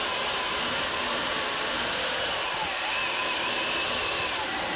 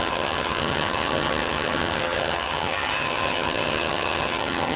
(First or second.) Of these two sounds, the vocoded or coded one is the second